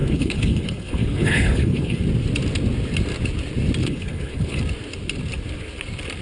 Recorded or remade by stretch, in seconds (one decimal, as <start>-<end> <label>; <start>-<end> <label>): 0.0-2.0 remade; 2.0-3.8 recorded; 3.8-4.6 remade; 4.6-6.2 recorded